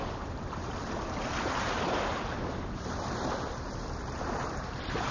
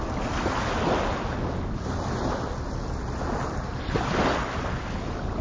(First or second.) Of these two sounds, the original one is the second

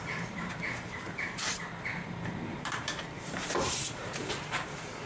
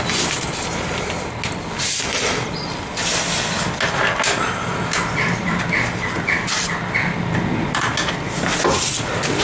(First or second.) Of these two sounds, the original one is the second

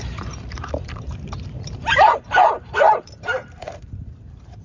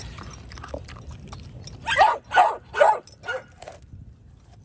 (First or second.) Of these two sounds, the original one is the second